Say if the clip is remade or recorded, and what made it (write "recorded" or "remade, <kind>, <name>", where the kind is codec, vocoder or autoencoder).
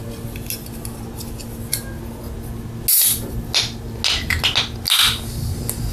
recorded